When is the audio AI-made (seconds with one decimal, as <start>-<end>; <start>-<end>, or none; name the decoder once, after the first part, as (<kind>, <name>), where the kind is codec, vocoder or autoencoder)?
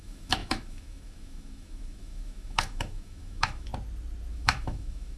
0.0-3.7 (autoencoder, DAC-VAE); 4.3-5.2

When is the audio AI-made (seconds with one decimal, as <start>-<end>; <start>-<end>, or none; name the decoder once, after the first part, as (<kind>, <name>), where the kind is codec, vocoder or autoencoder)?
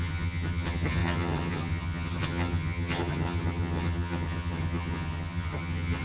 0.0-6.0 (vocoder, HiFi-GAN)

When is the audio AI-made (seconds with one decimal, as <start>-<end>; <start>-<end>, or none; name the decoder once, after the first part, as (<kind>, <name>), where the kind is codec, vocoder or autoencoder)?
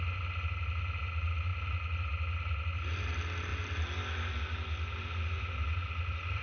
none